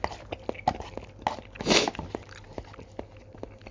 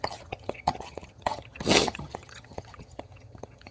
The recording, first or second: first